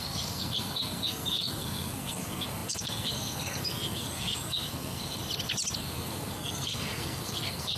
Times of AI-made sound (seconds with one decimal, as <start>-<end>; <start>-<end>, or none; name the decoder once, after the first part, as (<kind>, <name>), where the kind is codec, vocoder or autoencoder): 0.0-5.2 (codec, SNAC); 5.8-7.8